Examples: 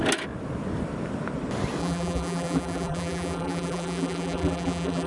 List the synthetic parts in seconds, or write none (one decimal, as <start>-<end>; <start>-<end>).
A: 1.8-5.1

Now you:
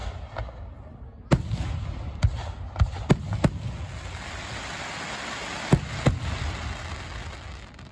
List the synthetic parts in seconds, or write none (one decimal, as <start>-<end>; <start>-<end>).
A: none

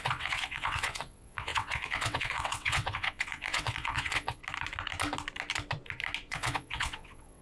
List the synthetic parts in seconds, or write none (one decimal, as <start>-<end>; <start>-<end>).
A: 0.0-4.4; 6.3-7.4